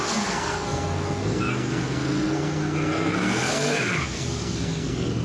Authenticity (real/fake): fake